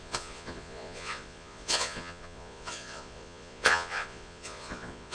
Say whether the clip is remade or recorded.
remade